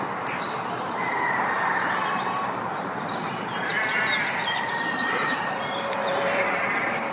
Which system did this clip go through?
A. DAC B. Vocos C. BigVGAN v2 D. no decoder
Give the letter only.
C